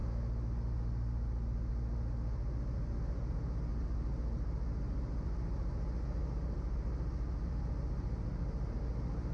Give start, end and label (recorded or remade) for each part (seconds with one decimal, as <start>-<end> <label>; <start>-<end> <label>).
0.0-9.3 recorded